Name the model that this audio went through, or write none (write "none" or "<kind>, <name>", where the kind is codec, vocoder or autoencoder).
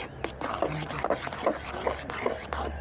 none